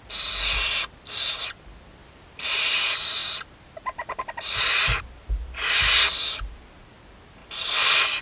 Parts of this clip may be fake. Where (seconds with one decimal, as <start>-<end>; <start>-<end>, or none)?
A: 2.0-2.5; 3.2-5.0; 7.4-8.2